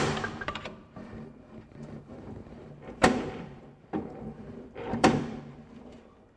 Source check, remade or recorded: remade